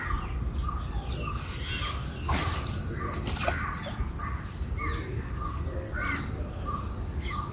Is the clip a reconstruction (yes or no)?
no